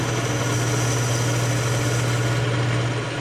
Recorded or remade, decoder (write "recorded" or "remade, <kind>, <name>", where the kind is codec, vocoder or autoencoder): recorded